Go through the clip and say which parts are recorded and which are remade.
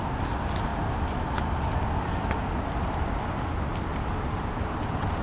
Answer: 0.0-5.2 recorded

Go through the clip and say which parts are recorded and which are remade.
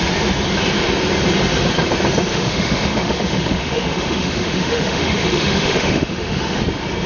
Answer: 0.0-2.3 recorded; 2.3-6.6 remade; 6.6-7.1 recorded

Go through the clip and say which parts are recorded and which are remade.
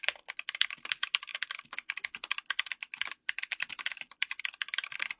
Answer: 0.0-5.2 recorded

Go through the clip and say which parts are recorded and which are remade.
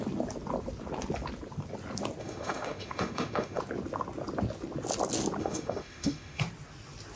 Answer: 0.0-2.2 recorded; 2.2-3.6 remade; 3.6-5.4 recorded; 5.4-6.4 remade; 6.4-7.2 recorded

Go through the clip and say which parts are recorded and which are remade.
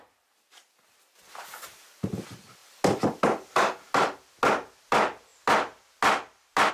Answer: 0.0-6.7 recorded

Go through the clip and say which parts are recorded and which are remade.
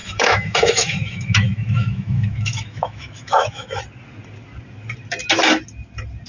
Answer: 0.0-3.8 remade; 3.8-6.3 recorded